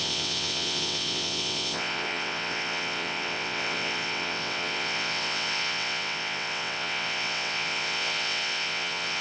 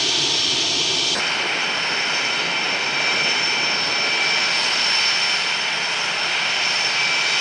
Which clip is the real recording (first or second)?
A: second